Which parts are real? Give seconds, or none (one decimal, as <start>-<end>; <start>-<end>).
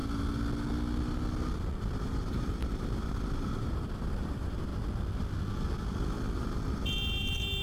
0.0-1.8; 4.7-6.2